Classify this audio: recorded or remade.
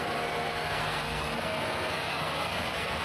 remade